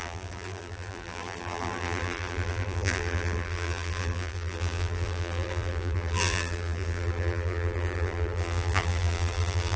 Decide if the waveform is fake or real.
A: fake